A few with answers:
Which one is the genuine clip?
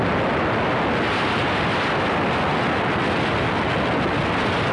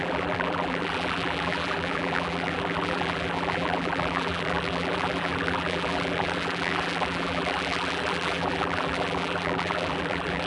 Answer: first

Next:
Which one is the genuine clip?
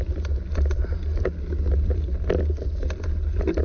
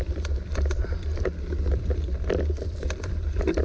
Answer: first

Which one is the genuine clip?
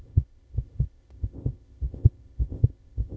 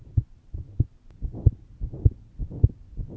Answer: second